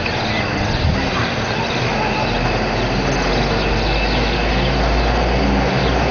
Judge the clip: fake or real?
real